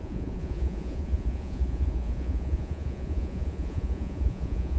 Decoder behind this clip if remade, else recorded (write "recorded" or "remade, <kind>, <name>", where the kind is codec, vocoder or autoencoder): remade, vocoder, Vocos